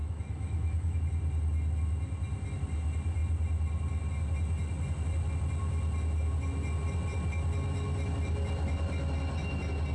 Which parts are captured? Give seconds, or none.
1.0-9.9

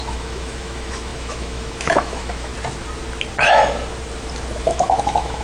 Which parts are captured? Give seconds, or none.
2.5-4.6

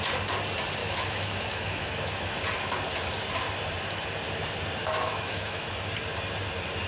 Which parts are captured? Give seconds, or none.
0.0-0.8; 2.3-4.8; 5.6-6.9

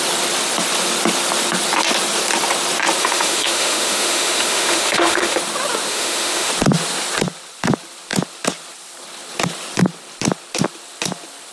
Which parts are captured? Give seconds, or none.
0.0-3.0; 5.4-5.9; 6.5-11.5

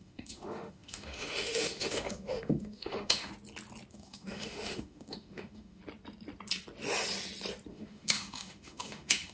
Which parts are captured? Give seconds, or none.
3.3-3.9; 5.8-7.7